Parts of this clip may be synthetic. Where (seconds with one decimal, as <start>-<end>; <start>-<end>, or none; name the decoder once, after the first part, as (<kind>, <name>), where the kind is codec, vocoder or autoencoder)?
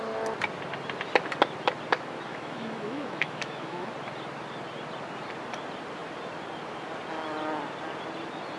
2.3-3.9 (autoencoder, DAC-VAE)